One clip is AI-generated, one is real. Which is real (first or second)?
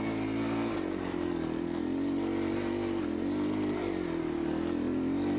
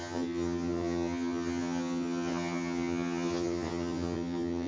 first